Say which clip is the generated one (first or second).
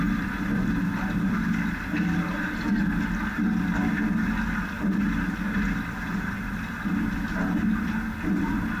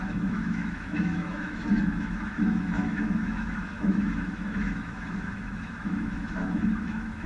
second